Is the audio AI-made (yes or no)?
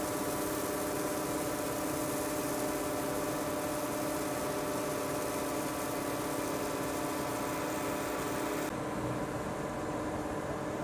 no